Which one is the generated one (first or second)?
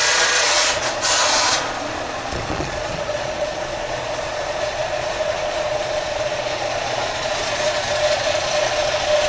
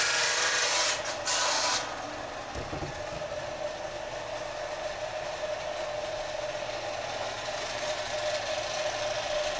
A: first